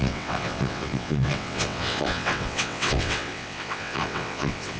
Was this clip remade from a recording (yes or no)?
yes